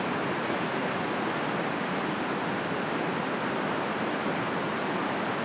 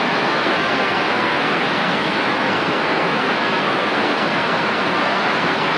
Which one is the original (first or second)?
first